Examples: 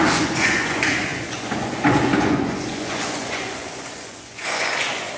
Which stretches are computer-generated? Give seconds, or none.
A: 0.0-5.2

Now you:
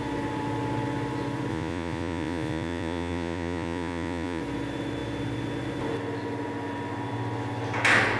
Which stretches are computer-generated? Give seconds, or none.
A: 1.5-4.4